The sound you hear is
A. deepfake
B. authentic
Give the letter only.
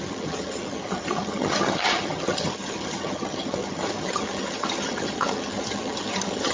A